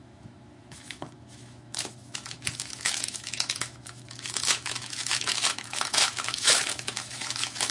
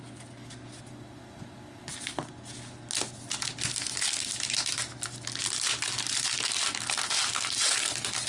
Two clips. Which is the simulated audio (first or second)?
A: first